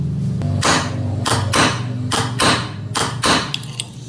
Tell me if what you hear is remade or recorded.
recorded